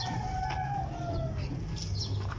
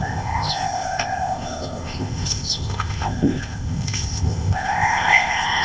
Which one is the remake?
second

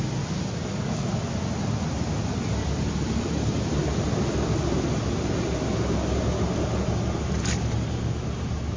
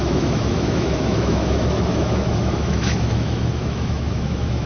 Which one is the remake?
second